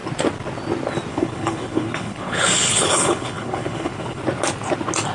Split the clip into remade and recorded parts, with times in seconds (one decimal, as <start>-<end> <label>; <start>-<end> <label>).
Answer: 0.0-1.1 recorded; 1.1-4.2 remade; 4.2-5.1 recorded